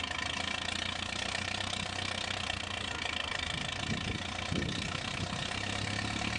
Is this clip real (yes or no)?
yes